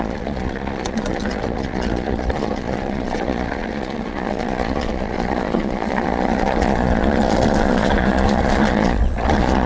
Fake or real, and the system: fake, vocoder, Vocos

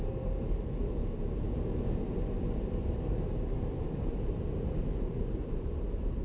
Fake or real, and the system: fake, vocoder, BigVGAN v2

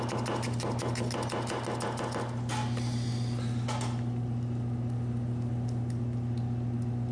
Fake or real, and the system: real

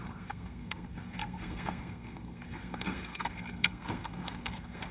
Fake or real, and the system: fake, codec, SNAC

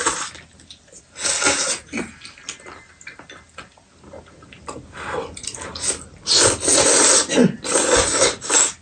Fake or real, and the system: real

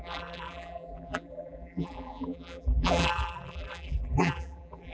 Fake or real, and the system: fake, vocoder, BigVGAN v2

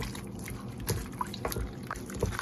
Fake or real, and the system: real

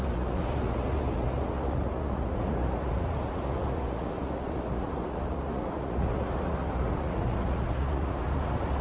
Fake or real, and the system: fake, vocoder, Vocos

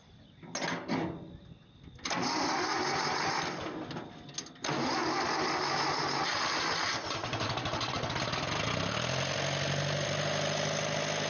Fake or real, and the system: real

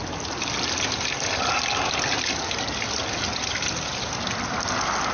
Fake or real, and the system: real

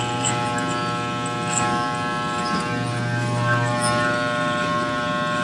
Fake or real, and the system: real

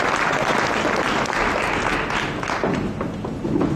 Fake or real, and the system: real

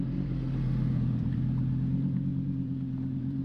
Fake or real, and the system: fake, vocoder, BigVGAN v2